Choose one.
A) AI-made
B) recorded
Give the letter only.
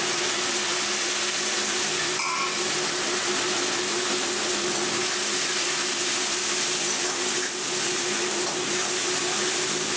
B